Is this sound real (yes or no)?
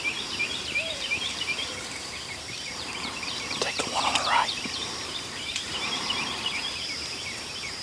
no